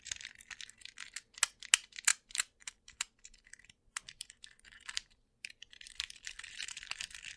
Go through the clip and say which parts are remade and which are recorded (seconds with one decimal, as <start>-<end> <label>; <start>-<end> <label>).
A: 0.0-2.1 recorded; 2.1-6.5 remade; 6.5-7.4 recorded